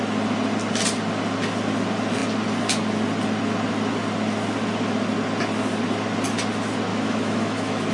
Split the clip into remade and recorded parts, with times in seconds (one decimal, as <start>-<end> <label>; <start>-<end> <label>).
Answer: 0.0-6.9 recorded; 6.9-7.9 remade